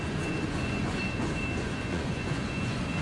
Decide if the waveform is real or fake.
fake